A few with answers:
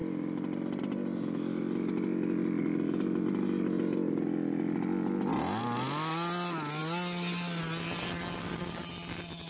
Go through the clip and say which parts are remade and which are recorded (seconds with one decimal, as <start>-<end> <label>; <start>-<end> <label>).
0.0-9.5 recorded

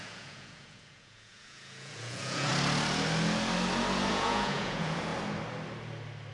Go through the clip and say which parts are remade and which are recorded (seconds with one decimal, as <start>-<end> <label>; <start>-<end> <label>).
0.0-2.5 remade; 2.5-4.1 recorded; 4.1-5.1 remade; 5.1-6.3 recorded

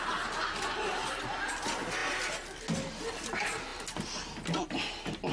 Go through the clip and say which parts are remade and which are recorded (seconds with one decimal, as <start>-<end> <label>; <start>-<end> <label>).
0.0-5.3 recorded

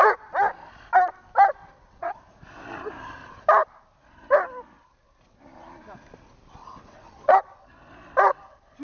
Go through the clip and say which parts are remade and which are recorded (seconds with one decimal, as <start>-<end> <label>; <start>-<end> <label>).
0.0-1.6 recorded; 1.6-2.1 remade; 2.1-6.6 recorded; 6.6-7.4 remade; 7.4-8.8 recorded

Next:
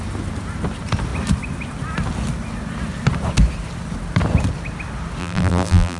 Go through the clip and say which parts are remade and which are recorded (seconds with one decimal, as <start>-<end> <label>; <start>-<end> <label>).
0.0-5.2 recorded; 5.2-6.0 remade

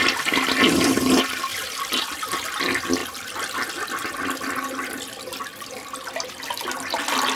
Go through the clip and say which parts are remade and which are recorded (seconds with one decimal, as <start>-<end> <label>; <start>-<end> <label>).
0.0-1.5 recorded; 1.5-2.6 remade; 2.6-7.4 recorded

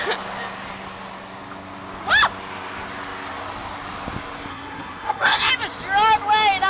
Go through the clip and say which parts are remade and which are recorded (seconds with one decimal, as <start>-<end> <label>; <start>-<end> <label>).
0.0-4.5 recorded; 4.5-5.5 remade; 5.5-6.7 recorded

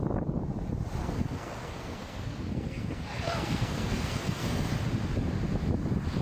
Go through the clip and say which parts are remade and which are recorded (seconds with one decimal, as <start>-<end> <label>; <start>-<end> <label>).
0.0-1.0 recorded; 1.0-4.7 remade; 4.7-6.2 recorded